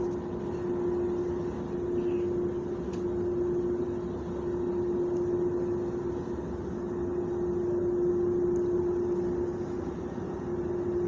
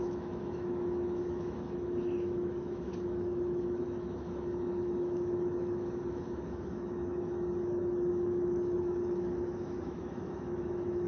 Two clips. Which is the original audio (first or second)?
first